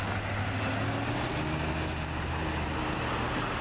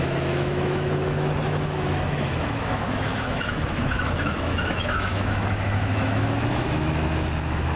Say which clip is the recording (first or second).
first